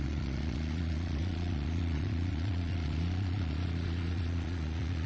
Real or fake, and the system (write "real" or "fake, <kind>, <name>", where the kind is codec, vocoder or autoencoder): fake, vocoder, Vocos